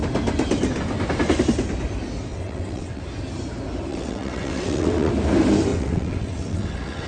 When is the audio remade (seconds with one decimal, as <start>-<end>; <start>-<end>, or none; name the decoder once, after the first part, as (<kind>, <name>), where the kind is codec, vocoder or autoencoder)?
2.3-3.0 (vocoder, WaveNeXt); 3.9-5.1; 5.7-7.1